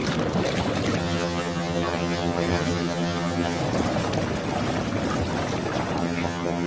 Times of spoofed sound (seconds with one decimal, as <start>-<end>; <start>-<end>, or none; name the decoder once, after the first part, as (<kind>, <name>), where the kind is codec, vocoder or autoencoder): 1.0-3.6 (vocoder, HiFi-GAN); 6.0-6.7